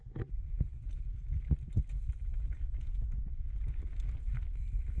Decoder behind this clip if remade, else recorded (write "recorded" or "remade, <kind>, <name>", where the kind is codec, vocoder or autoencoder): recorded